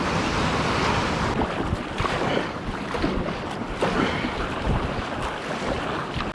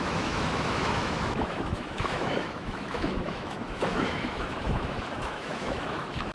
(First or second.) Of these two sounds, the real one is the first